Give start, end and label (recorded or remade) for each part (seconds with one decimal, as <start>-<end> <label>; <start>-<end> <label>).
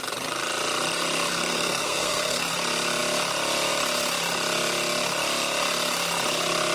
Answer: 0.0-1.3 recorded; 1.3-2.5 remade; 2.5-6.7 recorded